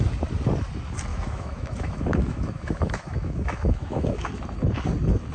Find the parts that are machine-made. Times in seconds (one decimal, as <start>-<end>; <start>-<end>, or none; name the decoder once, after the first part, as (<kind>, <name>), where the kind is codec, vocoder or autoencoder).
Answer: 1.1-4.3 (autoencoder, DAC-VAE)